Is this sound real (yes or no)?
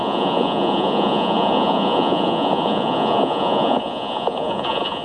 no